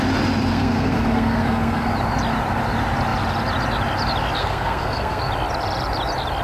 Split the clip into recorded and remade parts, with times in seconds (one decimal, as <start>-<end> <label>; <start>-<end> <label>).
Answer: 0.0-0.5 recorded; 0.5-1.9 remade; 1.9-4.4 recorded; 4.4-5.2 remade; 5.2-6.4 recorded